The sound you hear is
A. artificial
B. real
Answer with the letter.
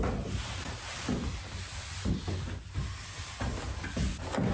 B